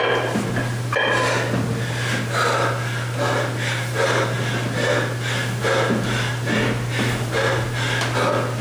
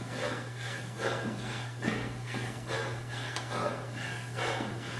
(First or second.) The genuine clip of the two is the first